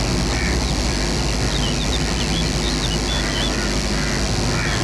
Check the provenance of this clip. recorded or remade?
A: recorded